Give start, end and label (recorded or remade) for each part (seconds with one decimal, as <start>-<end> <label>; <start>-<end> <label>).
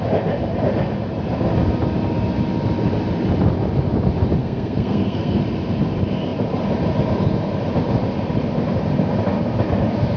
0.0-4.4 recorded; 4.4-5.4 remade; 5.4-10.2 recorded